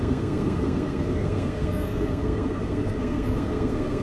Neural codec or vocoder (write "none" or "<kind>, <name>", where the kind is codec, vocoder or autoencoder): codec, SNAC